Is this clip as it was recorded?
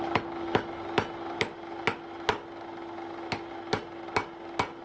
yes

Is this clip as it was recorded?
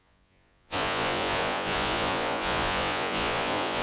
no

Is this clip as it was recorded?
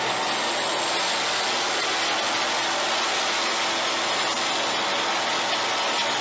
yes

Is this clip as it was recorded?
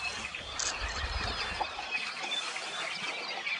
yes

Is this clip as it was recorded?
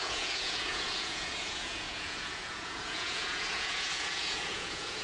no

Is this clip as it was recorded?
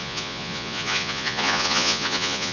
no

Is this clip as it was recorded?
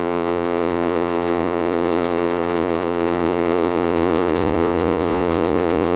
no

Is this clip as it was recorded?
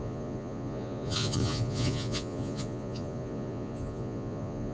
no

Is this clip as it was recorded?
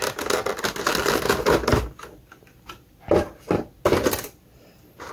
yes